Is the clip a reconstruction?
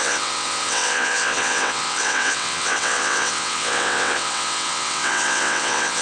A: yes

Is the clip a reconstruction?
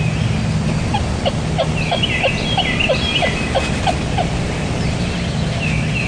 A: no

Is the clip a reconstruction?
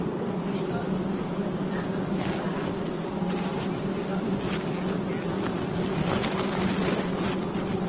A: no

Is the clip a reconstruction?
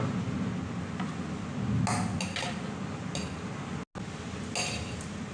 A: no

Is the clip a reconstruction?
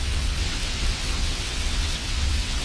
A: yes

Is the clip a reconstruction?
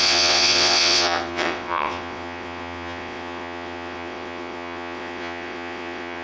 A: yes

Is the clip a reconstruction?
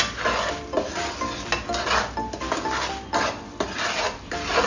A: no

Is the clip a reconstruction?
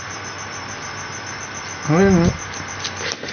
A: no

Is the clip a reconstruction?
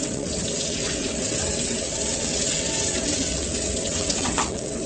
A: yes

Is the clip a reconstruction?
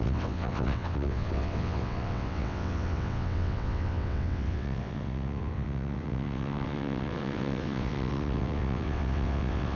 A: yes